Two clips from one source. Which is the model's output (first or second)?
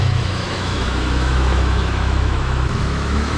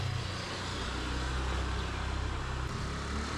first